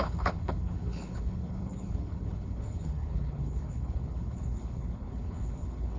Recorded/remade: remade